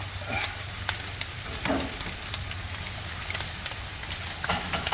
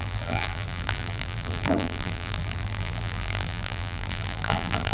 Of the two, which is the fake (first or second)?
second